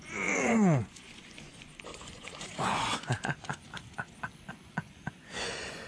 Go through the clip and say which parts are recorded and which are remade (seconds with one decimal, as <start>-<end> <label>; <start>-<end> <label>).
0.0-3.7 remade; 3.7-4.5 recorded; 4.5-5.9 remade